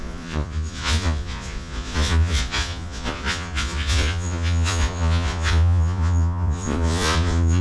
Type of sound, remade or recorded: remade